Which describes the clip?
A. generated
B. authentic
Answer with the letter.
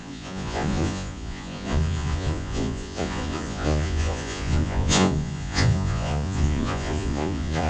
A